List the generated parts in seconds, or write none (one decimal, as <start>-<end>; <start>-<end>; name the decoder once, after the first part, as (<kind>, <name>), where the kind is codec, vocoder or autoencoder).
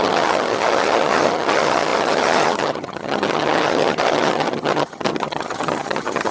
0.0-6.3 (vocoder, HiFi-GAN)